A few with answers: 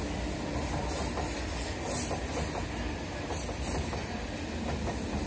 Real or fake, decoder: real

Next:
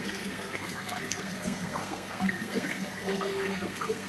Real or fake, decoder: fake, codec, SNAC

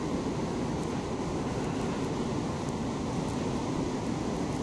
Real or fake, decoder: real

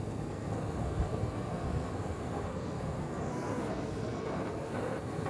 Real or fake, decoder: fake, codec, SNAC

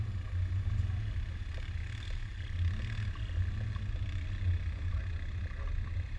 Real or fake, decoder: real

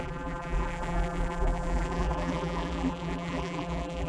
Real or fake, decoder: fake, vocoder, BigVGAN v2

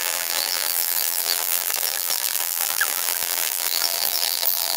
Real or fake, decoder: fake, vocoder, BigVGAN v2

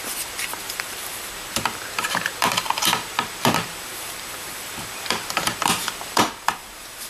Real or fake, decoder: fake, vocoder, BigVGAN v2